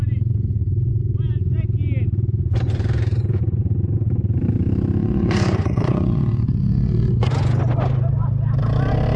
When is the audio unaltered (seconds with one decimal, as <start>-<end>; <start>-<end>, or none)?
0.0-5.0; 7.3-9.2